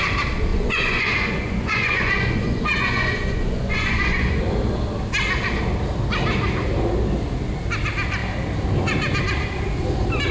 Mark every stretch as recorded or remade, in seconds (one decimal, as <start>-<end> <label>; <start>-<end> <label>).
0.0-0.5 recorded; 0.5-4.4 remade; 4.4-10.3 recorded